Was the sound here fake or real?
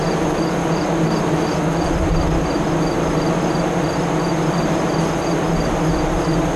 real